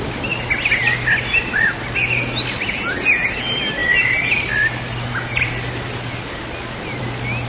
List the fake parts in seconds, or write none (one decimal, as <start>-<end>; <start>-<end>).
none